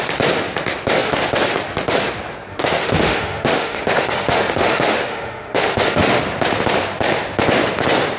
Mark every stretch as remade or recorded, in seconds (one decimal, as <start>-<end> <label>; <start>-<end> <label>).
0.0-2.5 recorded; 2.5-6.2 remade; 6.2-8.2 recorded